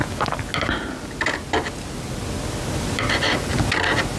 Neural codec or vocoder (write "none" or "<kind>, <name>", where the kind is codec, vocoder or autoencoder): none